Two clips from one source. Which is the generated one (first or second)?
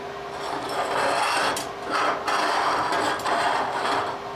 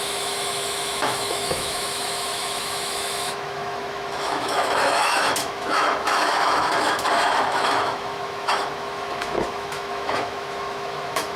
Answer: second